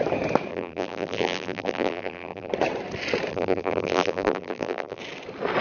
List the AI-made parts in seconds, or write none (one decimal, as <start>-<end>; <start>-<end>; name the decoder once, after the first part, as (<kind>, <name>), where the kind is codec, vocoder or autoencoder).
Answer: 0.5-2.5 (vocoder, BigVGAN v2); 3.3-5.0